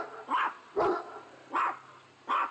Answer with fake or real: real